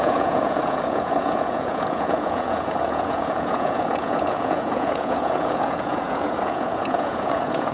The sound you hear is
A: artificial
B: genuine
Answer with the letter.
A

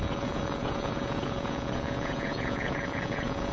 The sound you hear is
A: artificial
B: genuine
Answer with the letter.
A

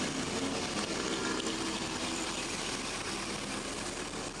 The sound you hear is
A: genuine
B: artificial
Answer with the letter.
A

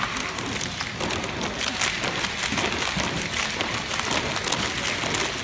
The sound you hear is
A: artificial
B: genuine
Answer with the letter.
B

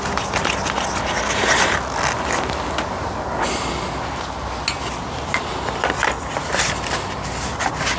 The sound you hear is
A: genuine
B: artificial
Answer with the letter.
A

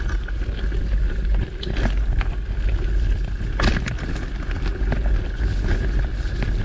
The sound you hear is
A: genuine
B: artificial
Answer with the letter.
A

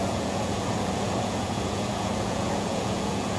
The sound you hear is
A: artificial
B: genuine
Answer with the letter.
A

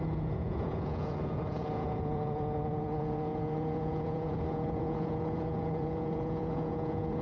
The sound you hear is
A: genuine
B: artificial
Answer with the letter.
B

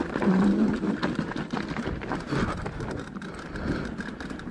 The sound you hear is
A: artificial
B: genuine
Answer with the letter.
B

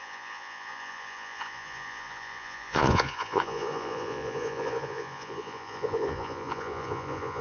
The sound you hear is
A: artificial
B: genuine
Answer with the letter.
A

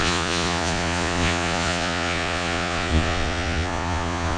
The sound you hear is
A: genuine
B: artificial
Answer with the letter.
B